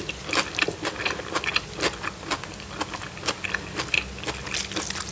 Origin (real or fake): real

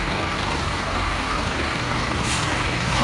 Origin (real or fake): fake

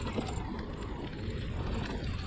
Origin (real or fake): real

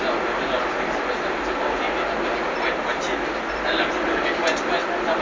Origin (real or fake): real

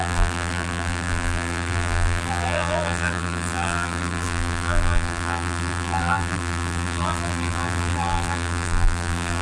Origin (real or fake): fake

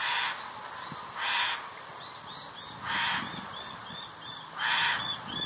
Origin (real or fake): real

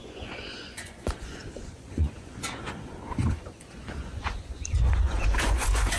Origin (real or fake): fake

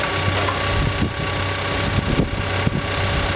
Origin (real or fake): real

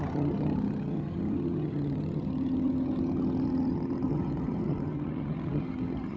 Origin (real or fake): fake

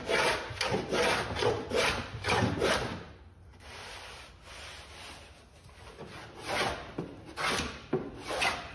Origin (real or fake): real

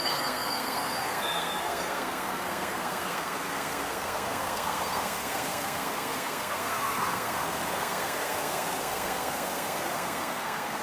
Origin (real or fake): fake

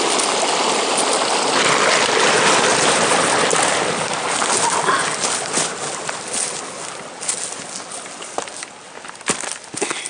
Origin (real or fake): real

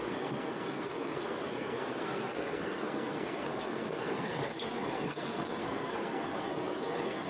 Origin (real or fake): fake